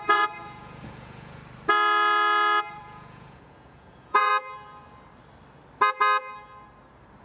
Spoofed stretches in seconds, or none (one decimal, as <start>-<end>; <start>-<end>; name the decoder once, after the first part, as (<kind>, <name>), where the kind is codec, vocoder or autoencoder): 0.0-1.4 (vocoder, Vocos); 2.7-4.3